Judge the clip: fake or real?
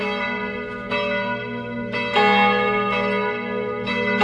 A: real